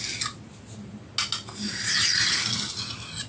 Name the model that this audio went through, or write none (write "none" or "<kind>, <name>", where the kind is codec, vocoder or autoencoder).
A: none